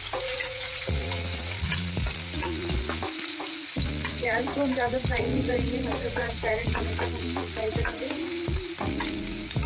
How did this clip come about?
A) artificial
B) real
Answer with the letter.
A